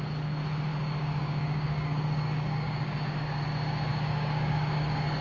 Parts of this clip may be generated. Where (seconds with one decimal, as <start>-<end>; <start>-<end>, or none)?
0.7-3.4; 3.9-5.2